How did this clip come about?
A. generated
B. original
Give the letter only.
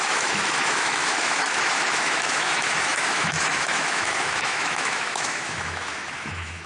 A